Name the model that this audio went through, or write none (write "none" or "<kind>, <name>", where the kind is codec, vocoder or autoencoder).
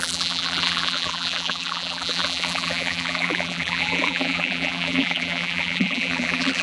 vocoder, BigVGAN v2